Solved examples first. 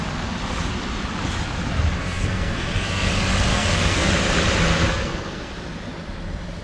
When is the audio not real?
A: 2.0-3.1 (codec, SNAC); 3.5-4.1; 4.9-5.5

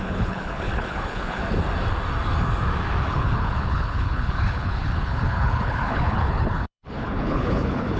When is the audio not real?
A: 0.0-1.4 (codec, HILCodec); 3.1-8.0

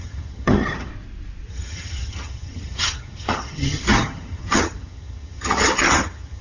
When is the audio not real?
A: 0.0-0.9 (vocoder, HiFi-GAN); 1.5-6.4

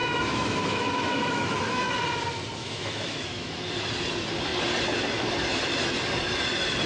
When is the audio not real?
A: 0.0-1.9 (autoencoder, DAC-VAE); 2.6-3.7